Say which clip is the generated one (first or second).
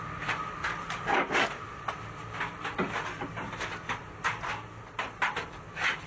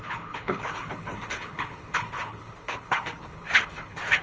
second